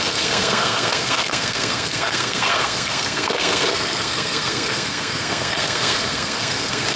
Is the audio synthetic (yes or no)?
yes